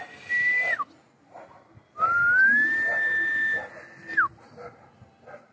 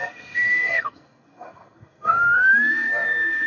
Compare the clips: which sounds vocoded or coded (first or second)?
second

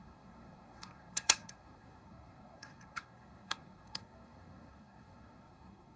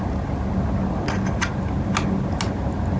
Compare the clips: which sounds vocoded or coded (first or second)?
first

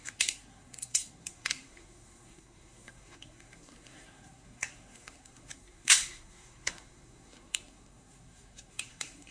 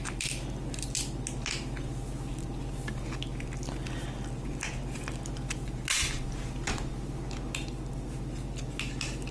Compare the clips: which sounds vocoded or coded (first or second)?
first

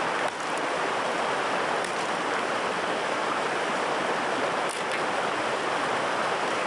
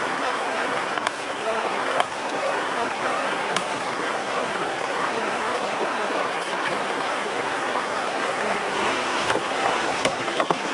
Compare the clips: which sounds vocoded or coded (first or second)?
second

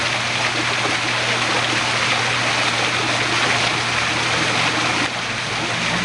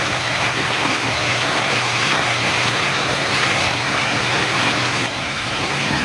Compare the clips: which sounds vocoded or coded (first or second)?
second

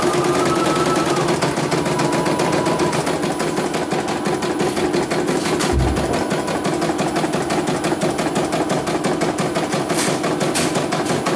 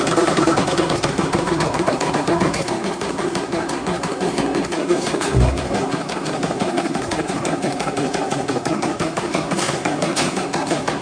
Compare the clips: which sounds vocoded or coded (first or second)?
second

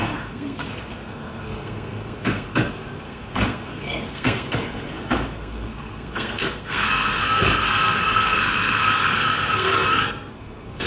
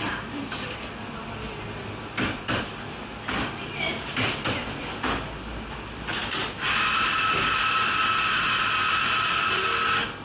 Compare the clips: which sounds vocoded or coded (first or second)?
first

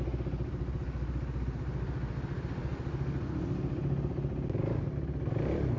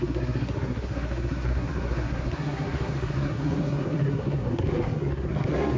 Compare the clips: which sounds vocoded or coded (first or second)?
second